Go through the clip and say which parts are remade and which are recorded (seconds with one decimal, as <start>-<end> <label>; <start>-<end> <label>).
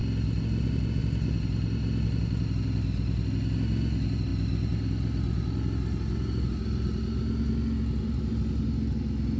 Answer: 0.0-9.4 recorded